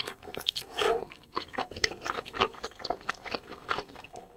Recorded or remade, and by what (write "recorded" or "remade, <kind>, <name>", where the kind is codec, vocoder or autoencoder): remade, codec, SNAC